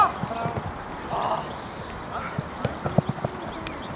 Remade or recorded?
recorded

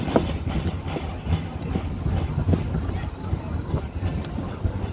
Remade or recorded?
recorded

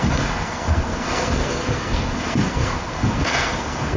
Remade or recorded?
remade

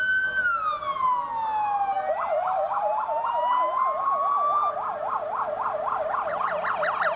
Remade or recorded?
recorded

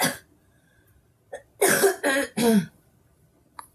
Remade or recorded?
recorded